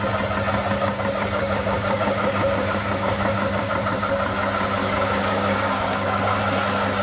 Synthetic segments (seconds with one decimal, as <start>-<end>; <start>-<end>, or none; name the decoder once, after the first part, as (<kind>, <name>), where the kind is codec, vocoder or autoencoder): 1.4-3.7 (codec, DAC); 4.8-6.4